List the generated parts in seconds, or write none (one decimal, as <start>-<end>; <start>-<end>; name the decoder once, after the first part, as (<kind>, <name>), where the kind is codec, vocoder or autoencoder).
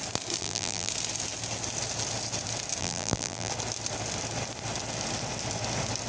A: 0.4-0.9 (vocoder, BigVGAN v2); 2.8-3.5